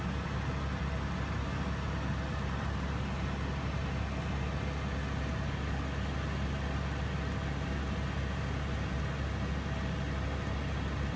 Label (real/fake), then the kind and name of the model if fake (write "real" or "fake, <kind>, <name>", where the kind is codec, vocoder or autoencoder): real